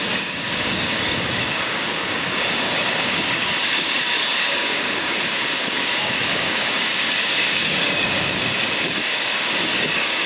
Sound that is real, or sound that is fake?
fake